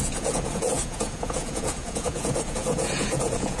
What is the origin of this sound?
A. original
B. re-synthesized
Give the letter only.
B